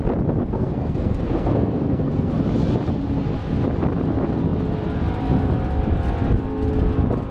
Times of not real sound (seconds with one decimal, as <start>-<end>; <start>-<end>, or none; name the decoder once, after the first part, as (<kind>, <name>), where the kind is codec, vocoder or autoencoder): 0.4-2.3 (codec, SNAC)